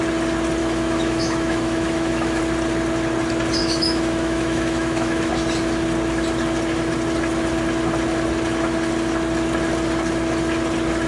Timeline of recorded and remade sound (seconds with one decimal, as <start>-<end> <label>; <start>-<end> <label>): 0.0-0.6 recorded; 0.6-2.4 remade; 2.4-3.6 recorded; 3.6-5.3 remade; 5.3-11.1 recorded

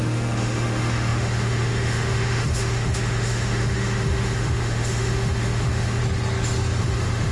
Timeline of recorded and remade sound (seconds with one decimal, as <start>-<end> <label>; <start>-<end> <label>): 0.0-6.0 remade; 6.0-6.8 recorded; 6.8-7.3 remade

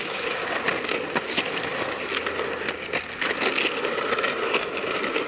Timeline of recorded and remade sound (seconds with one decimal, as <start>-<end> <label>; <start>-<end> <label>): 0.0-0.4 remade; 0.4-1.2 recorded; 1.2-1.7 remade; 1.7-5.3 recorded

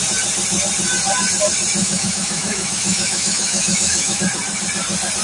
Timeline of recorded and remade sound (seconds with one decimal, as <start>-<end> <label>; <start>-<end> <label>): 0.0-1.8 recorded; 1.8-4.2 remade; 4.2-5.2 recorded

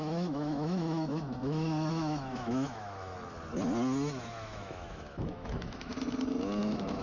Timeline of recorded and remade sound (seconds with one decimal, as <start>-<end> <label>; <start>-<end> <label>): 0.0-3.1 remade; 3.1-4.2 recorded; 4.2-5.9 remade; 5.9-6.6 recorded; 6.6-7.0 remade

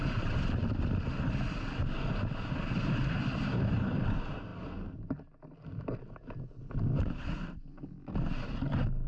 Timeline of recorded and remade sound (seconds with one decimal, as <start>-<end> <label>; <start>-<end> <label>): 0.0-9.1 recorded

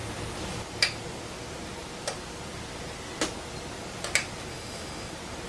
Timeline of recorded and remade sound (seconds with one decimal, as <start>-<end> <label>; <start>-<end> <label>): 0.0-4.5 recorded; 4.5-5.1 remade; 5.1-5.5 recorded